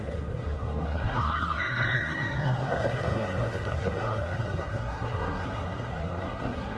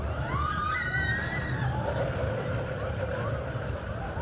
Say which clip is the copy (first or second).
first